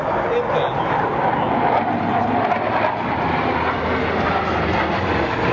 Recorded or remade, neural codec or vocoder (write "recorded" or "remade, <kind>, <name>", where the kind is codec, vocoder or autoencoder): recorded